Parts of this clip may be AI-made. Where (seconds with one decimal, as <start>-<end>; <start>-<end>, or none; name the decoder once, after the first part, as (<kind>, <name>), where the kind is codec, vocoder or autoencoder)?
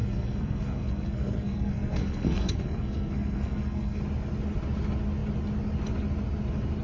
0.0-4.0 (codec, SNAC)